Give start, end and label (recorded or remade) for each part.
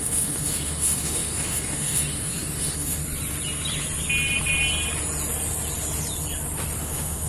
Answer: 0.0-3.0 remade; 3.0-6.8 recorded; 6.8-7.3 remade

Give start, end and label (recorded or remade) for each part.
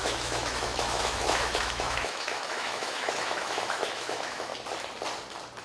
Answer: 0.0-4.5 remade; 4.5-5.6 recorded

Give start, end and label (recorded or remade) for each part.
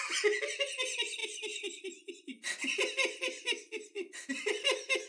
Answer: 0.0-5.1 recorded